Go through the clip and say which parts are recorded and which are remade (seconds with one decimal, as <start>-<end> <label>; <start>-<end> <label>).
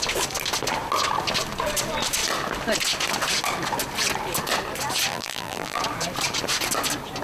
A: 0.0-5.1 recorded; 5.1-5.8 remade; 5.8-7.2 recorded